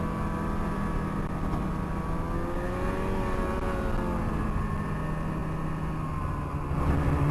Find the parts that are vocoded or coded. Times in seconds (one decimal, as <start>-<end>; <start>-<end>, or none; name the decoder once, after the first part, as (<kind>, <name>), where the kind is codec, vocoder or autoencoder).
none